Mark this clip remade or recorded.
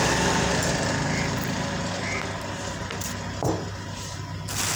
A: recorded